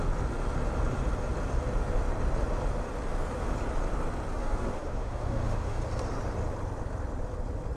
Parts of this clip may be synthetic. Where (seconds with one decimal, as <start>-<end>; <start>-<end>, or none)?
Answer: 4.3-5.8